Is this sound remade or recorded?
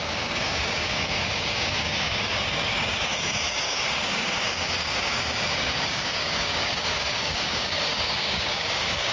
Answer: remade